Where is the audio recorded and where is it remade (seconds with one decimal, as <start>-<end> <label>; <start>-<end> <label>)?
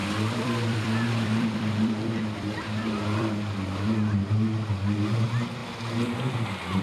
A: 0.0-3.3 remade; 3.3-6.8 recorded